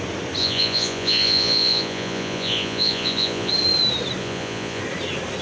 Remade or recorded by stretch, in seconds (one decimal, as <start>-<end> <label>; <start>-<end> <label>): 0.0-0.4 recorded; 0.4-3.5 remade; 3.5-4.2 recorded; 4.2-4.8 remade; 4.8-5.4 recorded